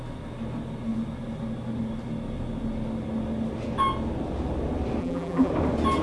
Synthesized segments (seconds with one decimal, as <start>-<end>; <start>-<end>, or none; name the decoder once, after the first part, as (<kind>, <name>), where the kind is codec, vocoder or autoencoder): 5.0-5.5 (vocoder, BigVGAN v2)